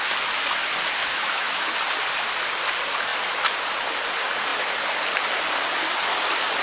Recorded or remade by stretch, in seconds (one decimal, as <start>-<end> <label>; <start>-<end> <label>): 0.0-1.0 recorded; 1.0-1.6 remade; 1.6-6.6 recorded